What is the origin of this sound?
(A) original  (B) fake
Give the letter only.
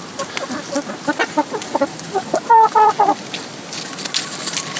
A